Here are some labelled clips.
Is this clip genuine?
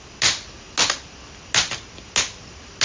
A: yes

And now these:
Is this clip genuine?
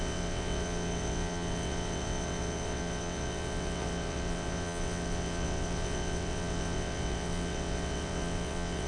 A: no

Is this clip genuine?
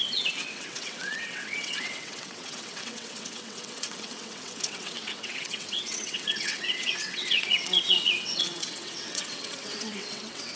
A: no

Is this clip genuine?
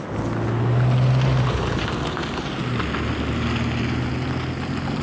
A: yes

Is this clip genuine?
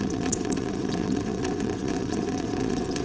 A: no